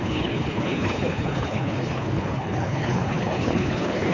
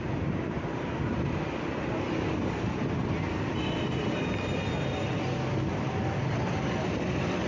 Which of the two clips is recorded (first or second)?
second